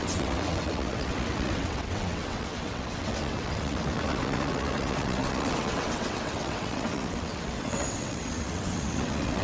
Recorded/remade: remade